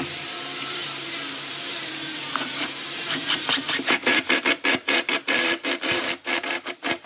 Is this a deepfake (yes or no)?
yes